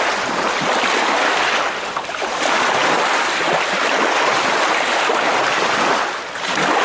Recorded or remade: recorded